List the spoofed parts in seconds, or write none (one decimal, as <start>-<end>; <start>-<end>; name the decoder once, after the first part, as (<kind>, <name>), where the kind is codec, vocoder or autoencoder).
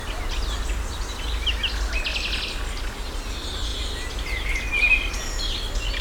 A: none